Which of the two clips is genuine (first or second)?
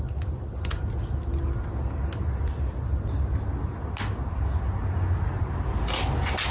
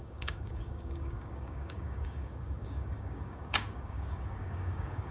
first